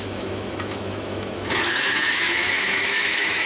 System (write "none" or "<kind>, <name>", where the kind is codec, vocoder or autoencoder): autoencoder, DAC-VAE